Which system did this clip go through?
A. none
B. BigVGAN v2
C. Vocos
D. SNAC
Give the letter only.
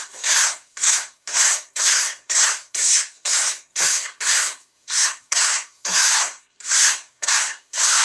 D